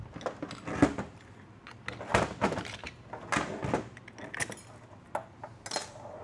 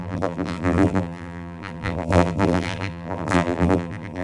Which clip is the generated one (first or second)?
second